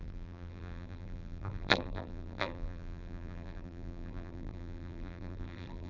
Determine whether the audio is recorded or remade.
remade